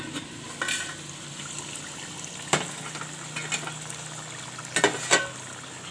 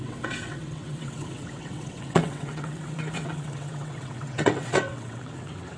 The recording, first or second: first